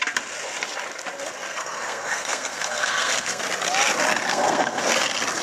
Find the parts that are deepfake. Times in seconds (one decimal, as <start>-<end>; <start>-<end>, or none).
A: 1.5-3.4; 4.3-4.8